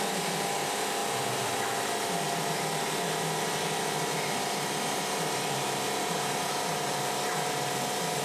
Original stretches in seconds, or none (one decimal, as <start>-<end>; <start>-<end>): 0.0-1.0; 1.5-8.2